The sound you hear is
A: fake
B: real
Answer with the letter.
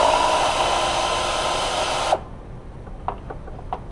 B